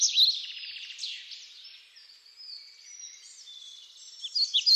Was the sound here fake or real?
real